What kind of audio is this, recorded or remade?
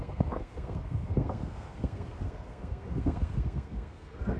remade